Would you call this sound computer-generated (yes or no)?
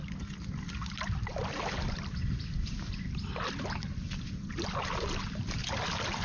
no